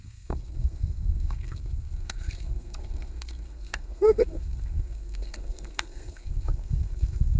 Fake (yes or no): yes